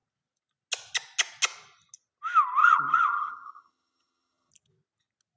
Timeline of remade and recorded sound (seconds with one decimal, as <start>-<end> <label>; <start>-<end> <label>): 0.0-2.6 recorded; 2.6-4.5 remade; 4.5-5.4 recorded